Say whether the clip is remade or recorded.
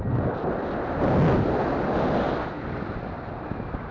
recorded